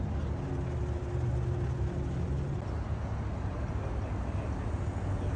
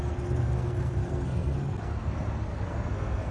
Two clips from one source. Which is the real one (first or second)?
first